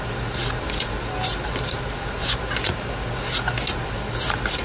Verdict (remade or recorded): recorded